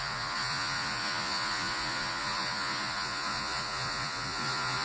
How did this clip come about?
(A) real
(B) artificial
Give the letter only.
B